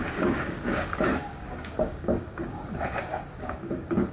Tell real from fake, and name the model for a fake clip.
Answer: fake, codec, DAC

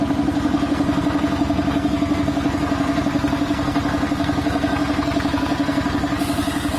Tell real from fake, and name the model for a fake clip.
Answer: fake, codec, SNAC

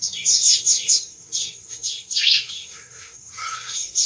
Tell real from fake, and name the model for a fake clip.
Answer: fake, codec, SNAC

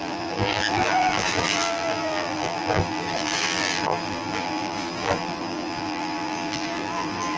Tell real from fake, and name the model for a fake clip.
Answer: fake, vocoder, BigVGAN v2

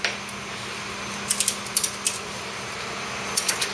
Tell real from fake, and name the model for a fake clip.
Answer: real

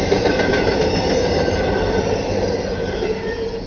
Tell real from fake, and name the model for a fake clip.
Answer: real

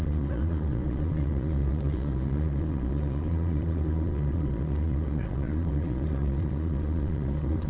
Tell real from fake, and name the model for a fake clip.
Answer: fake, vocoder, Vocos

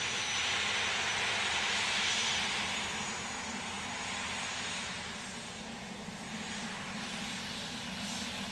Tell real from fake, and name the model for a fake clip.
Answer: real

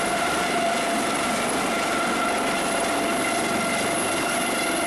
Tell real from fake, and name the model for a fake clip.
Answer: real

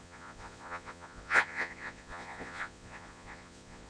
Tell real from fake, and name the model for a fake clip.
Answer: fake, vocoder, Vocos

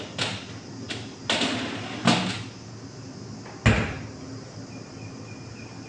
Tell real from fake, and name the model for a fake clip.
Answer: real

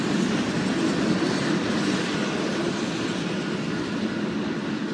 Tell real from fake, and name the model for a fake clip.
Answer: real